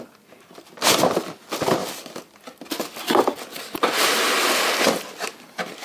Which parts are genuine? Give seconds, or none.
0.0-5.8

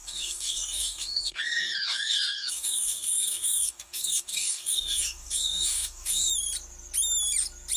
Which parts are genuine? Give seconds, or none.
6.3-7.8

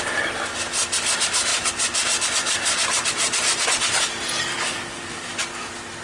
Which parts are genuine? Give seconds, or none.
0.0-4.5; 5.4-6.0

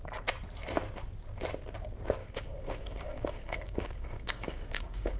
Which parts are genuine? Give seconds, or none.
0.0-2.2